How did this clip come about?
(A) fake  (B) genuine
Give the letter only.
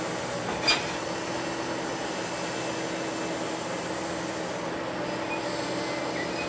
B